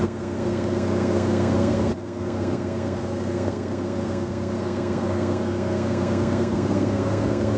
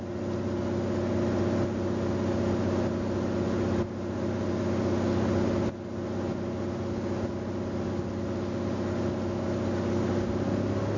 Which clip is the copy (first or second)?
first